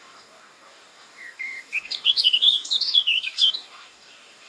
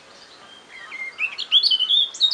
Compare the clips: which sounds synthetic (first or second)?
first